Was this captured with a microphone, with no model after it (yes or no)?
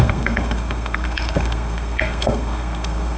no